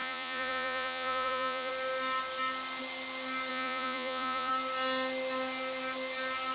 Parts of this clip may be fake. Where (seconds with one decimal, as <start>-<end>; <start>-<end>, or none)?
0.0-1.7; 3.5-4.5